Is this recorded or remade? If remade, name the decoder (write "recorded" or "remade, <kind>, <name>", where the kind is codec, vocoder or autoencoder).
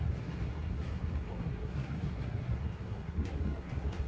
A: remade, codec, SNAC